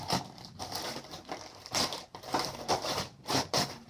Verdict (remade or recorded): remade